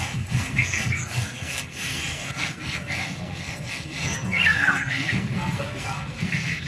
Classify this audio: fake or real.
fake